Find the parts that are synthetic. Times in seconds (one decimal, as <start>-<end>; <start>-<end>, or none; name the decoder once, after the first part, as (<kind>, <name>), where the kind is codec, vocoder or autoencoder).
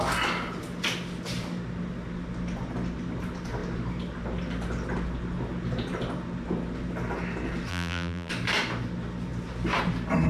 7.7-8.3 (vocoder, BigVGAN v2)